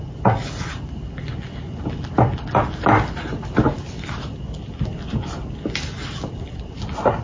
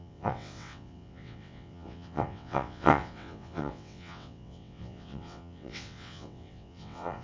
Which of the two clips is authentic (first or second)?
first